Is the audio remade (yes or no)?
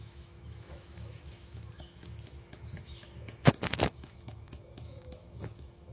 yes